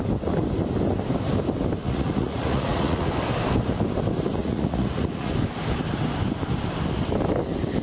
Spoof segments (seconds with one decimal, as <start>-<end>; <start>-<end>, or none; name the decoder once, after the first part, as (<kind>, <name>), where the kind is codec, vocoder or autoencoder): 1.8-3.1 (vocoder, Vocos); 4.4-5.3